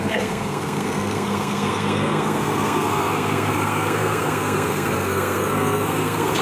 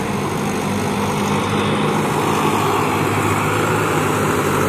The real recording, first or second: second